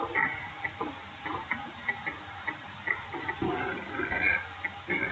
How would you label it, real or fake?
real